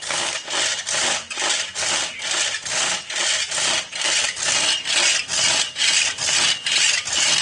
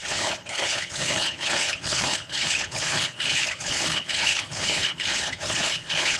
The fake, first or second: second